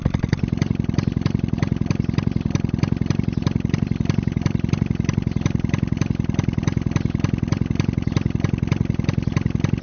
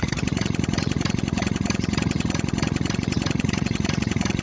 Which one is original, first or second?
first